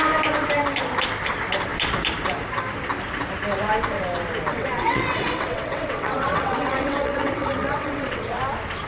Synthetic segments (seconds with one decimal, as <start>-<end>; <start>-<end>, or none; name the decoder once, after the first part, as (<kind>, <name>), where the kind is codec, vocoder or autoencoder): 4.5-8.4 (vocoder, WaveNeXt)